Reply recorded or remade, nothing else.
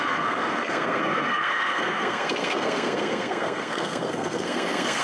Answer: remade